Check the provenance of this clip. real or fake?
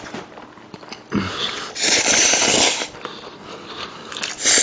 real